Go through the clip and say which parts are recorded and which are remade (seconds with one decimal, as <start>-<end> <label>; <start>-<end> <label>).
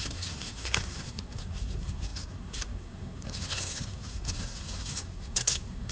0.0-5.9 remade